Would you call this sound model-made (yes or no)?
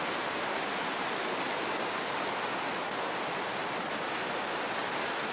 no